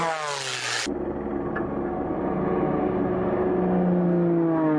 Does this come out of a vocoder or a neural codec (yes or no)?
no